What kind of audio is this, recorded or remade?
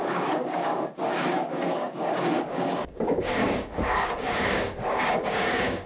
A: remade